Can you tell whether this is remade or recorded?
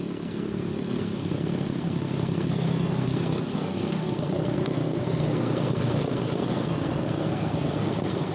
remade